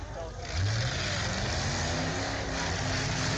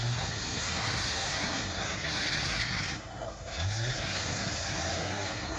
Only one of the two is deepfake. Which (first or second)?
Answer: second